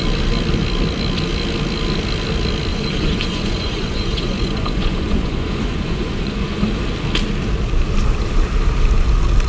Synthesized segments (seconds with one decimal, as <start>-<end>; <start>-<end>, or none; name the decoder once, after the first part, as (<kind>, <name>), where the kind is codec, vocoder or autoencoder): 2.7-6.6 (vocoder, Vocos)